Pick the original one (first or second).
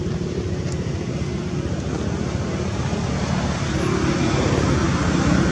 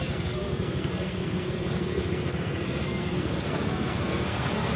first